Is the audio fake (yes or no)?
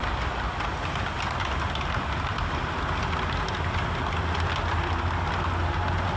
no